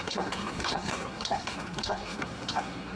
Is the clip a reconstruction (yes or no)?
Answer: yes